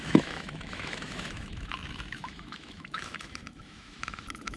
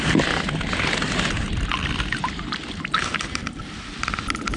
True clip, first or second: second